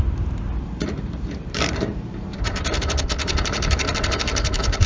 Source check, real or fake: fake